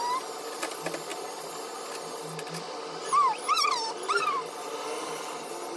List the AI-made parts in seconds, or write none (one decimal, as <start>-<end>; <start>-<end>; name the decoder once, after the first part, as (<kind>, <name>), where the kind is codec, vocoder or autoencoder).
none